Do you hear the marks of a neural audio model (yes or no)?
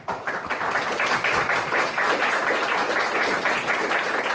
no